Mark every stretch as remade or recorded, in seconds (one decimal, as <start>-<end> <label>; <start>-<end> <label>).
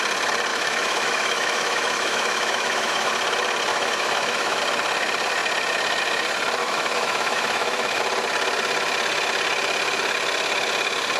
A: 0.0-0.5 recorded; 0.5-3.1 remade; 3.1-3.7 recorded; 3.7-4.6 remade; 4.6-6.6 recorded; 6.6-8.0 remade; 8.0-11.2 recorded